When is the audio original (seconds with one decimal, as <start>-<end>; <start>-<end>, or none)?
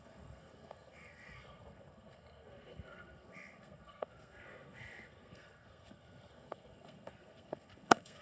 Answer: none